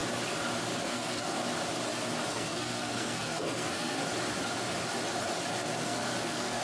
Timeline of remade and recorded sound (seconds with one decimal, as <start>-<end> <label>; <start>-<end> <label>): 0.0-0.8 recorded; 0.8-1.4 remade; 1.4-2.3 recorded; 2.3-4.0 remade; 4.0-5.5 recorded; 5.5-6.6 remade